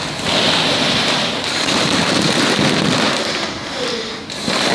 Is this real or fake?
real